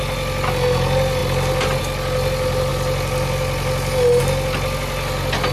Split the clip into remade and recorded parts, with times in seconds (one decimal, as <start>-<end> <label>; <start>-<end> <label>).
0.0-5.5 recorded